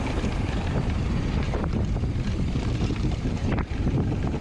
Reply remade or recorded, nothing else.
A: remade